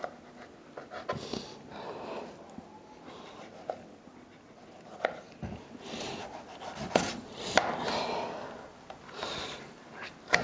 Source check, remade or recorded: recorded